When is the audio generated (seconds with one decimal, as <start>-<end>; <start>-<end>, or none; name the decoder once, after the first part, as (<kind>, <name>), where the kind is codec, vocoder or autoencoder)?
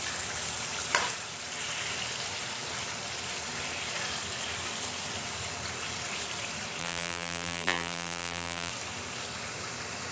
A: 6.8-8.7 (vocoder, BigVGAN v2)